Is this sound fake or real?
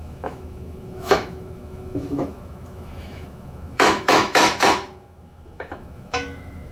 fake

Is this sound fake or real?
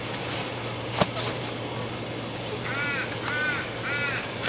real